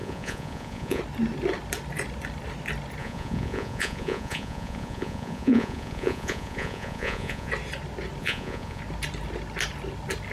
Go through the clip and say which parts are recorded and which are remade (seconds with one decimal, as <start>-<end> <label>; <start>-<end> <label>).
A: 0.0-1.0 remade; 1.0-3.0 recorded; 3.0-7.5 remade; 7.5-8.2 recorded; 8.2-8.8 remade; 8.8-10.3 recorded